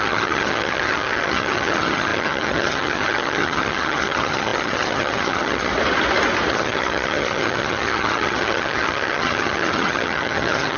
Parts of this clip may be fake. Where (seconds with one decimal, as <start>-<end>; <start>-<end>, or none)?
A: 0.0-5.7; 6.5-10.8